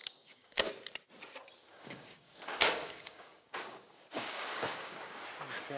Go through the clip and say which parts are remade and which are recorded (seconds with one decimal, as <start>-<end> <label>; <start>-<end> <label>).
0.0-0.7 remade; 0.7-1.7 recorded; 1.7-5.2 remade; 5.2-5.8 recorded